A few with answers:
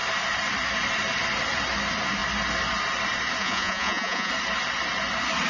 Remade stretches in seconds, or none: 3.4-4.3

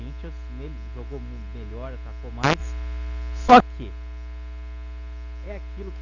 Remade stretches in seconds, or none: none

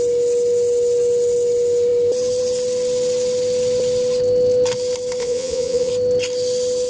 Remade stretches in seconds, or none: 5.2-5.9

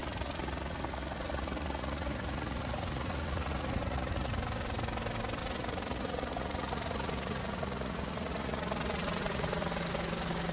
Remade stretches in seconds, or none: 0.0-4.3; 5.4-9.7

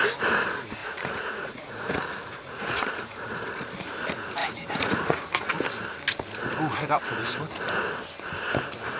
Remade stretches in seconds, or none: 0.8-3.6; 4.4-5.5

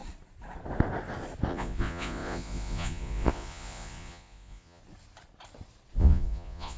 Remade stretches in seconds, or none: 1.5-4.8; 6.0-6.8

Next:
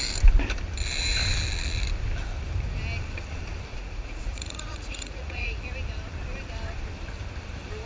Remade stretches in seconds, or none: 3.7-5.6